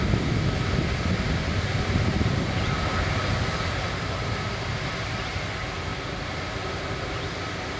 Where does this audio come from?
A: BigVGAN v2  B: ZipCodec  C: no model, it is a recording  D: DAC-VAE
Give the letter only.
C